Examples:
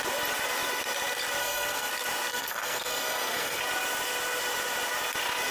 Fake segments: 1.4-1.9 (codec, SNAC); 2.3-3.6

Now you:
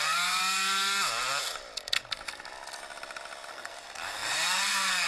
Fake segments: 0.0-0.4 (codec, SNAC); 3.5-5.1

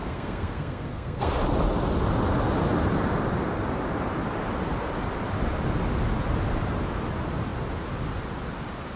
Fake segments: 0.0-1.3 (codec, SNAC)

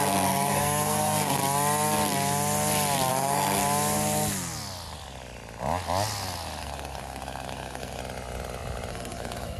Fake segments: 0.0-1.4 (codec, SNAC); 3.1-3.6; 6.6-8.0; 8.9-9.6

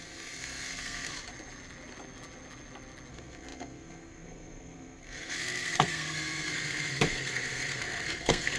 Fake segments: 0.0-1.1 (codec, SNAC); 3.1-8.6

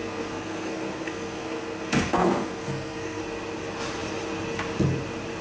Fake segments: 0.0-3.2 (codec, SNAC)